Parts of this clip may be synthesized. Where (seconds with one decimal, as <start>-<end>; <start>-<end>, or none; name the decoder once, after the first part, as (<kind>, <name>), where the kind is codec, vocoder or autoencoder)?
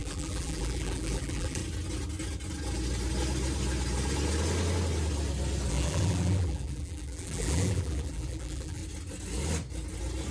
0.0-1.6 (vocoder, BigVGAN v2); 5.7-8.8